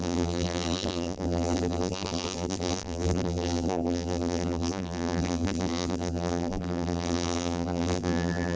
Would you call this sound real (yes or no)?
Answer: no